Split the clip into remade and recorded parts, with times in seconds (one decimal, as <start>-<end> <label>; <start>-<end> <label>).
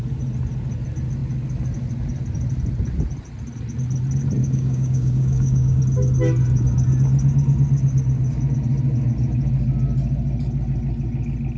0.0-4.4 recorded; 4.4-5.8 remade; 5.8-11.6 recorded